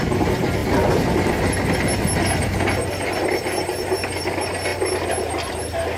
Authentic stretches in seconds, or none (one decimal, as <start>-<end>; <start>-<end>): 0.0-6.0